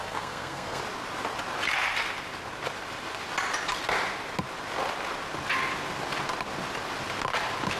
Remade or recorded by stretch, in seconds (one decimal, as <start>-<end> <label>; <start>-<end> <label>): 0.0-0.8 remade; 0.8-7.8 recorded

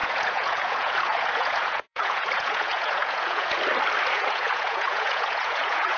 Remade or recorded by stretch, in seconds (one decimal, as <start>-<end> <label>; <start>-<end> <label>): 0.0-3.6 remade; 3.6-4.1 recorded; 4.1-6.0 remade